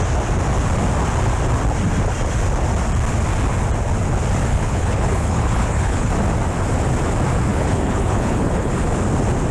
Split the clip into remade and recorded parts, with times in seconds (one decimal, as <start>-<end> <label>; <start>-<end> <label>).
0.0-4.5 recorded; 4.5-6.1 remade; 6.1-7.5 recorded; 7.5-8.7 remade; 8.7-9.5 recorded